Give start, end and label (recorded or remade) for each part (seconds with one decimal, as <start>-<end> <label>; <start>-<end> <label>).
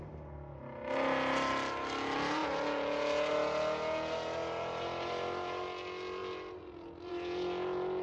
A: 0.0-8.0 recorded